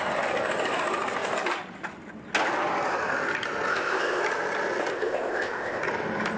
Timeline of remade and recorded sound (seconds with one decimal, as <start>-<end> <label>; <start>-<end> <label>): 0.0-3.7 recorded; 3.7-4.2 remade; 4.2-4.9 recorded; 4.9-5.8 remade; 5.8-6.4 recorded

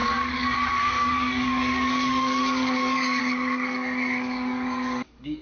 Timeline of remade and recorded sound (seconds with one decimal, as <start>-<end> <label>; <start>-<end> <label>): 0.0-5.4 remade

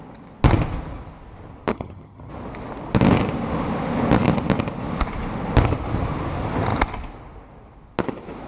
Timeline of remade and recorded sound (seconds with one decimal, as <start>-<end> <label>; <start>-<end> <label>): 0.0-1.7 recorded; 1.7-2.3 remade; 2.3-8.5 recorded

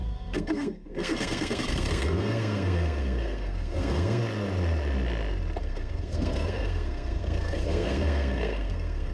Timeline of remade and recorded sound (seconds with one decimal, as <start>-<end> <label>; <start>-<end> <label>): 0.0-4.2 remade; 4.2-5.6 recorded; 5.6-9.1 remade

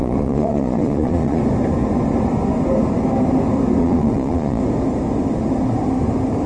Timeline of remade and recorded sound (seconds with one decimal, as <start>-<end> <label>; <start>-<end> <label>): 0.0-1.4 remade; 1.4-3.8 recorded; 3.8-4.6 remade; 4.6-6.5 recorded